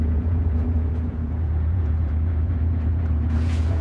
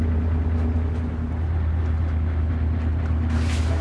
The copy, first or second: first